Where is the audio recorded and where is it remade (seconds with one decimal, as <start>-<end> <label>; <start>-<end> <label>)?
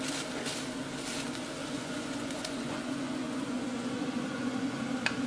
0.0-1.6 recorded; 1.6-4.8 remade; 4.8-5.3 recorded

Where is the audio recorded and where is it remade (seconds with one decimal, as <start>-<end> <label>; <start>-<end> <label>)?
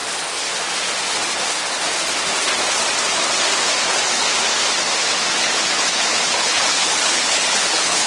0.0-3.9 recorded; 3.9-4.3 remade; 4.3-5.3 recorded; 5.3-8.1 remade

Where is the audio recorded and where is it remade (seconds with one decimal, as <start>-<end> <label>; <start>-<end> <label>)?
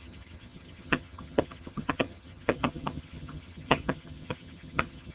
0.0-5.1 remade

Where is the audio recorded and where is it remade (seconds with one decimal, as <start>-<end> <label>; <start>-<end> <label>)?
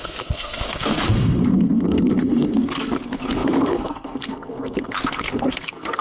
0.0-6.0 remade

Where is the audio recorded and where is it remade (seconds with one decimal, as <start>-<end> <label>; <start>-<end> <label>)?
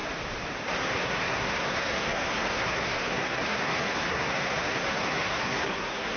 0.0-0.8 recorded; 0.8-6.2 remade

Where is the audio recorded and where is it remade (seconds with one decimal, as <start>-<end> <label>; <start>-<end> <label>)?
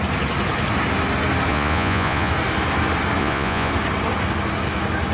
0.0-1.5 recorded; 1.5-2.3 remade; 2.3-3.2 recorded; 3.2-3.7 remade; 3.7-5.1 recorded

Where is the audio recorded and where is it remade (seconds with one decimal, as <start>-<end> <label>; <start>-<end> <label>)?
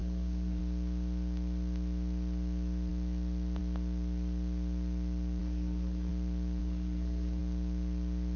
0.0-0.6 remade; 0.6-5.4 recorded; 5.4-6.1 remade; 6.1-6.6 recorded; 6.6-7.4 remade; 7.4-8.4 recorded